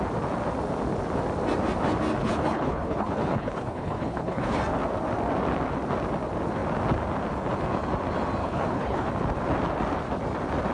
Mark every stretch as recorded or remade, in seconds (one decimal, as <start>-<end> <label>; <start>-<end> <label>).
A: 0.0-2.2 recorded; 2.2-4.6 remade; 4.6-8.4 recorded; 8.4-9.1 remade; 9.1-10.7 recorded